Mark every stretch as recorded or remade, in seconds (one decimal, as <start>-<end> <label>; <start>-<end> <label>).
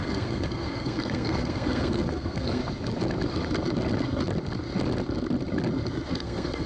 0.0-2.6 remade; 2.6-6.1 recorded; 6.1-6.7 remade